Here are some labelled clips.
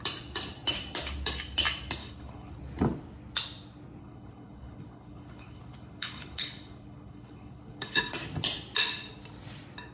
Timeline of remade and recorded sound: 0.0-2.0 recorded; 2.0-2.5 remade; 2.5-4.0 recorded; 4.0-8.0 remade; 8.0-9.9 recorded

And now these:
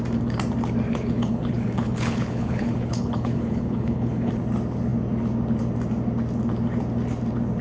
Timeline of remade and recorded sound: 0.0-0.9 recorded; 0.9-4.3 remade; 4.3-7.6 recorded